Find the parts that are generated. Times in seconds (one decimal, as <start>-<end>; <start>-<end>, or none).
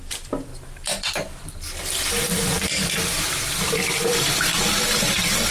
0.0-0.5; 2.1-4.5